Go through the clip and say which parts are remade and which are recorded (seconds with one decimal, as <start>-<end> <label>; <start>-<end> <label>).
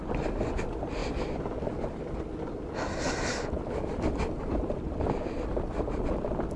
0.0-1.0 recorded; 1.0-5.0 remade; 5.0-6.6 recorded